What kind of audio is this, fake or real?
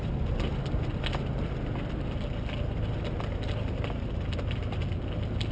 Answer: real